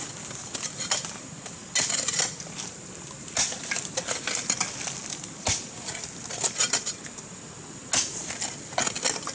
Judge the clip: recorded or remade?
recorded